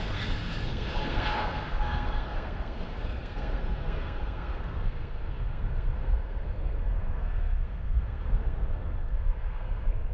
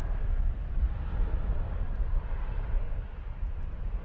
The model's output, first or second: first